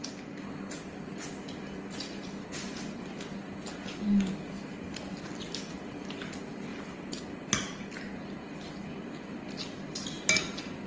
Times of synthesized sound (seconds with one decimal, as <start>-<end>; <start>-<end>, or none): none